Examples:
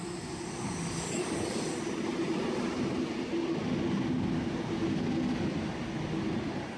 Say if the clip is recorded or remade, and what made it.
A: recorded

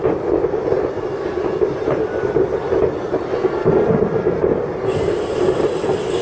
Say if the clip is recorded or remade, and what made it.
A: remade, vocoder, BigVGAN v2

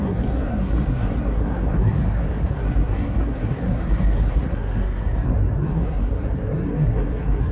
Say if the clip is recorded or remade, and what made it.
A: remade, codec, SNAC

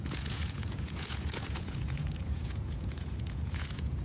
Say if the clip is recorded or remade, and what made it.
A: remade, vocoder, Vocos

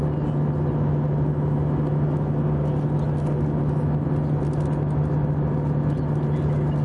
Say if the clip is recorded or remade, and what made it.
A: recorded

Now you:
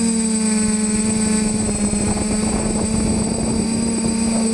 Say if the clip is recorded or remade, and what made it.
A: recorded